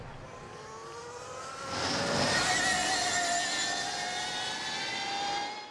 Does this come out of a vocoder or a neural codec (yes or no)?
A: no